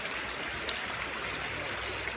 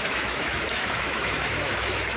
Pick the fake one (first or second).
second